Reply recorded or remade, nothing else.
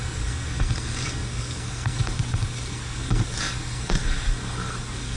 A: remade